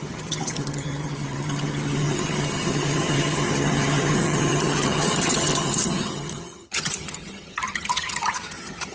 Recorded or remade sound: remade